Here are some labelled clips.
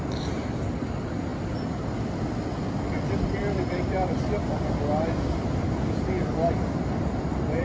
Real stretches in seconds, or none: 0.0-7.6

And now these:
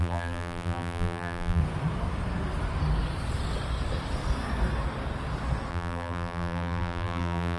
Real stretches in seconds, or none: 1.6-5.7

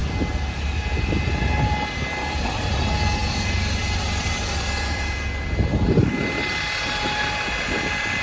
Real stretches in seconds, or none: 0.0-8.2

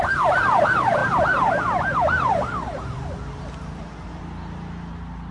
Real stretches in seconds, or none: 0.0-5.3

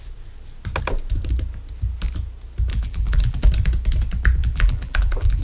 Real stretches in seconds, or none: 0.0-2.7; 3.5-4.4

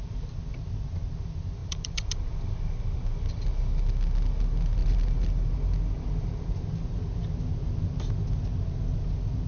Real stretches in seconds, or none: 0.0-1.6; 2.3-4.8; 5.5-9.5